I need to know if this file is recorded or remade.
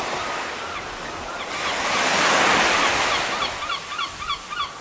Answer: recorded